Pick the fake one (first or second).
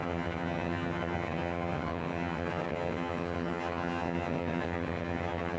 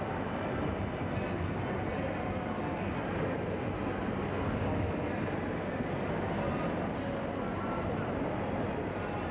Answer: first